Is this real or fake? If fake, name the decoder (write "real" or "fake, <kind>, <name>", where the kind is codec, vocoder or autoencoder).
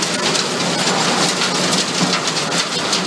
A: real